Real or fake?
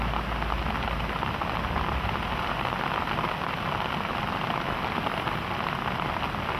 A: real